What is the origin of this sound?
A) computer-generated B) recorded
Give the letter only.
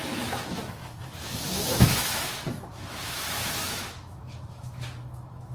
A